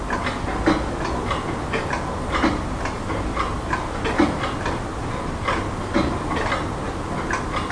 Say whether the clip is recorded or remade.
recorded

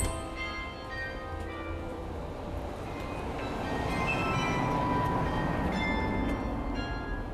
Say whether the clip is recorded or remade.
recorded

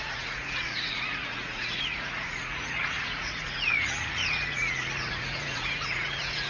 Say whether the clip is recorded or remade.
remade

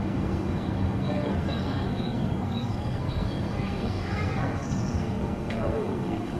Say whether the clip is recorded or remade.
remade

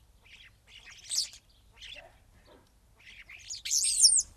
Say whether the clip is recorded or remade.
recorded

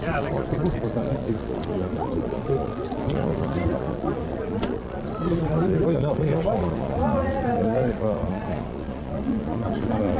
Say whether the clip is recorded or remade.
remade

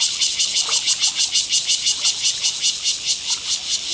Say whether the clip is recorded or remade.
recorded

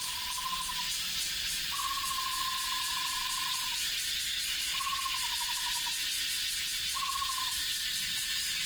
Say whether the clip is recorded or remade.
remade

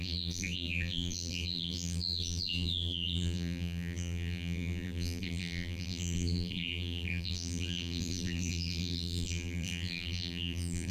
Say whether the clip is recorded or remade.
remade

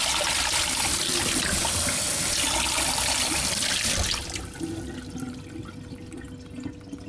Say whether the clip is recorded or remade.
recorded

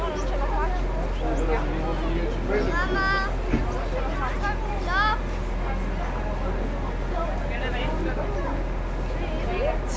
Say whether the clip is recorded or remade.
recorded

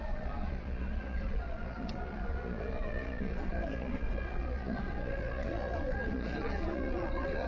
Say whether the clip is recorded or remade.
remade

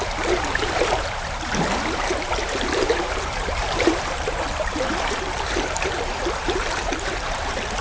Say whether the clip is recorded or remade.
remade